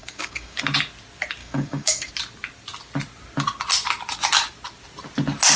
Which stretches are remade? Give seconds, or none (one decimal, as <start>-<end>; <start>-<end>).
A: 0.0-0.6; 1.4-2.1